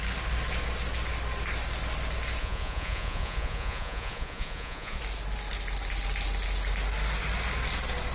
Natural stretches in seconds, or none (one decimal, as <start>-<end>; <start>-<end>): 0.0-2.4; 5.0-8.1